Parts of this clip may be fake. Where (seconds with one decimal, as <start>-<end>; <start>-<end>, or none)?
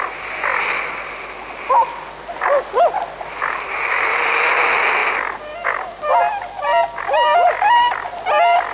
none